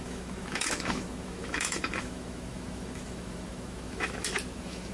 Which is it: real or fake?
fake